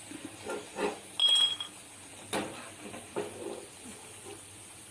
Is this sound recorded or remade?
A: recorded